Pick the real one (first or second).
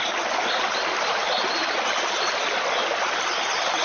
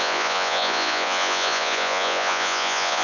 first